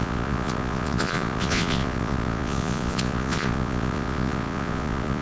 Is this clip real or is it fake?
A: fake